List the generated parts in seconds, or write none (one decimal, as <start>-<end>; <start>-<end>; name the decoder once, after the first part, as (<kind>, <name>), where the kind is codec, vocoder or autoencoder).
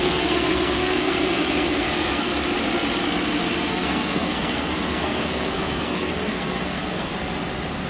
0.0-2.3 (codec, SNAC); 3.7-7.1